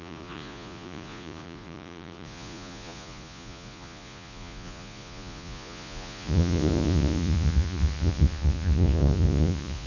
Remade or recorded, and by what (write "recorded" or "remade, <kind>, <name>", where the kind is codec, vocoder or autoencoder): remade, vocoder, Vocos